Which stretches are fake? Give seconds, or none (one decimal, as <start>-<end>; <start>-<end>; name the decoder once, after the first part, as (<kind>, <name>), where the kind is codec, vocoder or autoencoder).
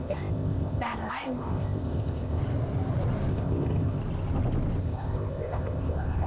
0.0-2.4 (codec, ZipCodec); 3.3-4.0; 4.8-6.3